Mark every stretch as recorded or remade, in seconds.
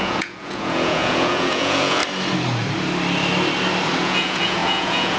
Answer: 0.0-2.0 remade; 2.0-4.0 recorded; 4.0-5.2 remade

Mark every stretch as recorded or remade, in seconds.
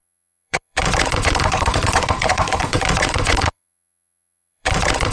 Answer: 0.0-5.1 remade